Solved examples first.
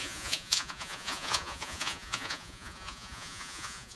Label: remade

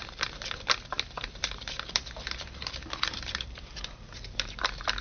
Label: remade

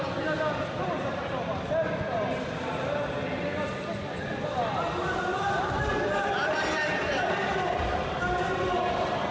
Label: recorded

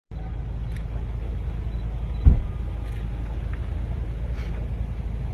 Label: recorded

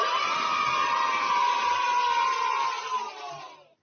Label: recorded